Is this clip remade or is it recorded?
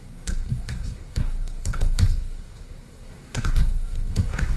remade